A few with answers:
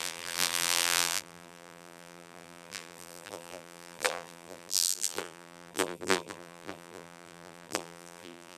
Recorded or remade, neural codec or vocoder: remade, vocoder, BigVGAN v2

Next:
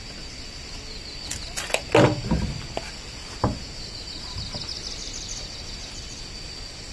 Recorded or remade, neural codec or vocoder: recorded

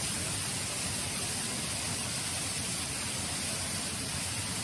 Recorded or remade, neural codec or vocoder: recorded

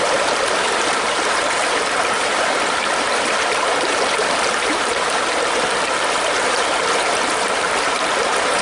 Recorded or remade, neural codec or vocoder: remade, vocoder, BigVGAN v2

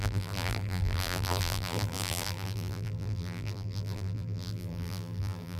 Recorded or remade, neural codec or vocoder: remade, vocoder, BigVGAN v2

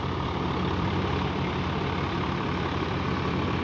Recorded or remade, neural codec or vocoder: remade, vocoder, BigVGAN v2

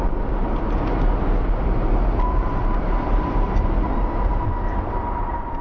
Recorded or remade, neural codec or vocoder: recorded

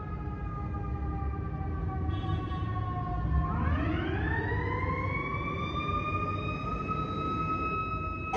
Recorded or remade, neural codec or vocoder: recorded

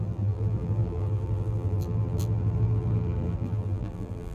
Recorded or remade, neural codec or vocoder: remade, vocoder, BigVGAN v2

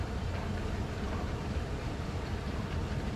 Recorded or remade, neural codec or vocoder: remade, vocoder, BigVGAN v2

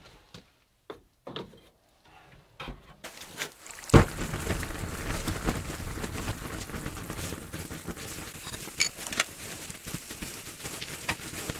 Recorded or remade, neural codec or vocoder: remade, vocoder, BigVGAN v2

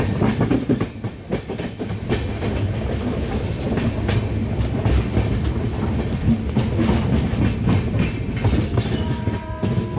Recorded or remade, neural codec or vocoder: recorded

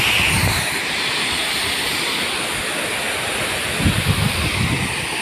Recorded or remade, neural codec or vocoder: recorded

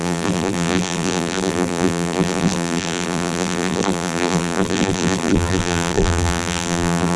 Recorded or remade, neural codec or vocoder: remade, vocoder, BigVGAN v2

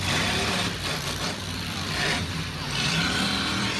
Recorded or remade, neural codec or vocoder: remade, vocoder, BigVGAN v2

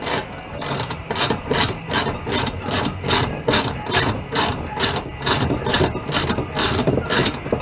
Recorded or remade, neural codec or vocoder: remade, vocoder, BigVGAN v2